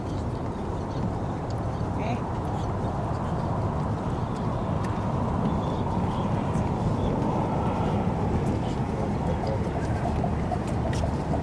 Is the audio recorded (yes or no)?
yes